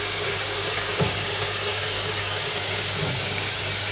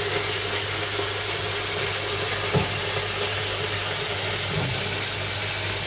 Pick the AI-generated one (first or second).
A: first